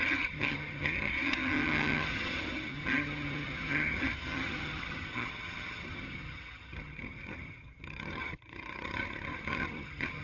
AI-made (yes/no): yes